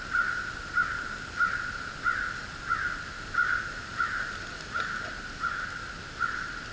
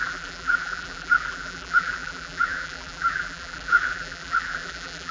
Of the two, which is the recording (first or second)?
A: first